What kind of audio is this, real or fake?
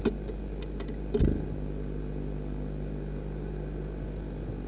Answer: real